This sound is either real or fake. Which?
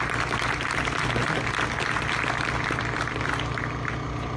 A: real